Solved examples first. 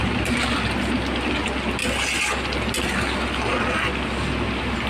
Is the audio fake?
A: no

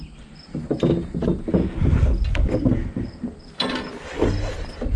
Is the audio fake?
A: no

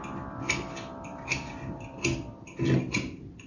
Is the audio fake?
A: no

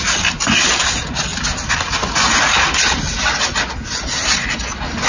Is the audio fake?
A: no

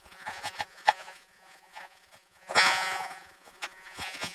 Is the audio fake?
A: yes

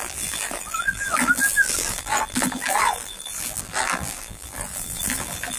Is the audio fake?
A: yes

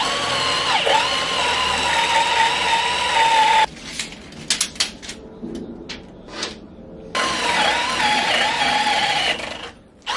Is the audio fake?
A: no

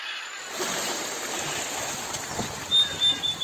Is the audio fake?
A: no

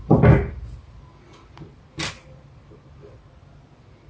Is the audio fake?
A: no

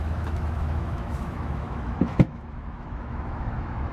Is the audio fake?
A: yes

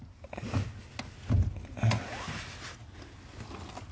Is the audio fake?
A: no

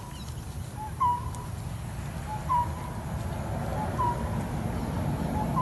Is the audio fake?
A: no